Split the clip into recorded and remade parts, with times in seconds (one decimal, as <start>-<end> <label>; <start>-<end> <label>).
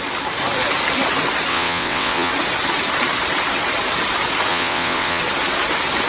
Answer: 0.0-1.5 recorded; 1.5-2.3 remade; 2.3-4.5 recorded; 4.5-5.2 remade; 5.2-6.1 recorded